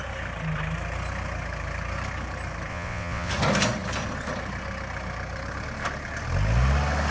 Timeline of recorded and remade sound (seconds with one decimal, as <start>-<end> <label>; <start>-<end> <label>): 0.0-2.7 recorded; 2.7-3.3 remade; 3.3-7.1 recorded